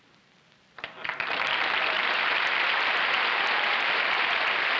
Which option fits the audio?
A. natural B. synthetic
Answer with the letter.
A